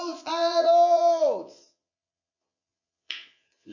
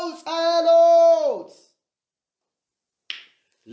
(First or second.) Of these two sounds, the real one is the second